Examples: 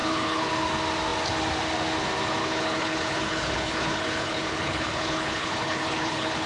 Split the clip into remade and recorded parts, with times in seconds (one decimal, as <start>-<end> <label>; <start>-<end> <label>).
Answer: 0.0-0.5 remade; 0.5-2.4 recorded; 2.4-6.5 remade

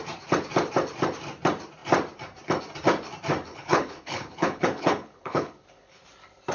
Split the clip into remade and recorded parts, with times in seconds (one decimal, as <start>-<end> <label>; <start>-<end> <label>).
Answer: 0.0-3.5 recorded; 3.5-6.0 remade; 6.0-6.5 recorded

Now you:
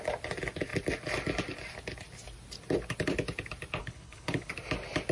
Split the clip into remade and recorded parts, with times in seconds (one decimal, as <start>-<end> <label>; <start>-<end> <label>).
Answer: 0.0-3.8 recorded; 3.8-4.5 remade; 4.5-5.1 recorded

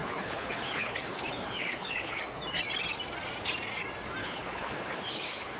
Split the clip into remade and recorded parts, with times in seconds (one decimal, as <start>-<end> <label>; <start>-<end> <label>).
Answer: 0.0-2.2 remade; 2.2-4.2 recorded; 4.2-5.6 remade

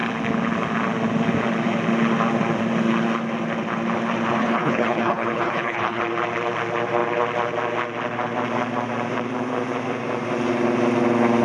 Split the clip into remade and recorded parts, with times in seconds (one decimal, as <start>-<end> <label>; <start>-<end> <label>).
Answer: 0.0-4.4 recorded; 4.4-6.0 remade; 6.0-11.4 recorded

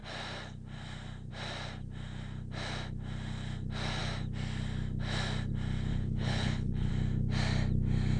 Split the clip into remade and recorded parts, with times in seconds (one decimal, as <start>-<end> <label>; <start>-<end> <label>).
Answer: 0.0-5.9 recorded; 5.9-6.9 remade; 6.9-8.2 recorded

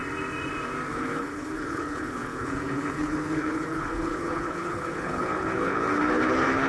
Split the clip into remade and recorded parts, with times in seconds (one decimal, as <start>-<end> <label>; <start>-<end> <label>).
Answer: 0.0-0.9 recorded; 0.9-6.7 remade

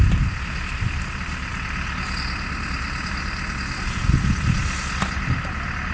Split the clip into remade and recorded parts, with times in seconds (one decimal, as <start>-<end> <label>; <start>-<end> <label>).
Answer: 0.0-5.9 recorded